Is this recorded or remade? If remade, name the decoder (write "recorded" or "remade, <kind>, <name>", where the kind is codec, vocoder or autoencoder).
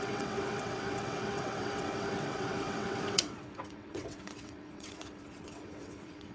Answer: remade, vocoder, WaveNeXt